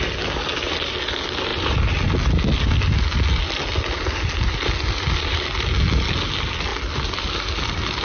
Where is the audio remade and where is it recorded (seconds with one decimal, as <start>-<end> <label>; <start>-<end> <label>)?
0.0-8.0 recorded